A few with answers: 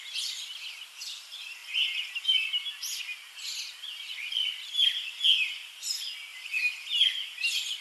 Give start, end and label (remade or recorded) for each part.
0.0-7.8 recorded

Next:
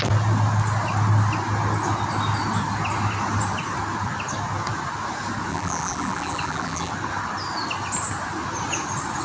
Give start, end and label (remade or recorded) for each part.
0.0-5.5 recorded; 5.5-6.9 remade; 6.9-9.2 recorded